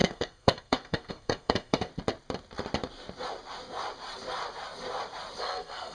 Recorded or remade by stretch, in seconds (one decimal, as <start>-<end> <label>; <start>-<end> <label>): 0.0-1.9 remade; 1.9-5.4 recorded; 5.4-5.9 remade